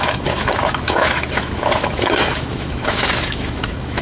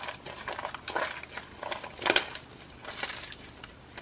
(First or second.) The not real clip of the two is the first